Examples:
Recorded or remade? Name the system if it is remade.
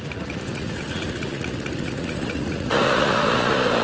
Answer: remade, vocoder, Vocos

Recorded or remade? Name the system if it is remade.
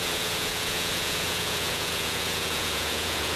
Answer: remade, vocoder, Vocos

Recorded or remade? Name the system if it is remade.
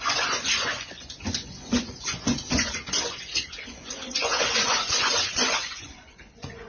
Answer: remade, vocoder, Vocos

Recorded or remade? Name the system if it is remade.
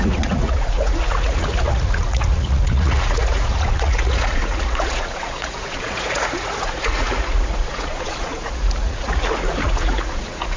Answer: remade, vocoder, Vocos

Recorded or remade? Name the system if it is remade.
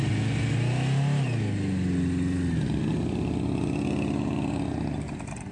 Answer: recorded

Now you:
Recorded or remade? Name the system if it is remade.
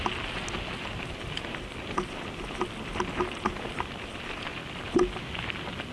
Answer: recorded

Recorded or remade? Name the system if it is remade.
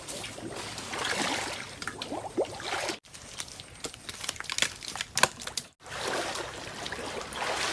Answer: recorded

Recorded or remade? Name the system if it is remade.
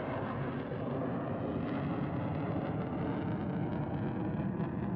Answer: recorded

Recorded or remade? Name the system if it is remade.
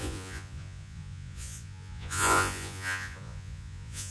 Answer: remade, vocoder, Vocos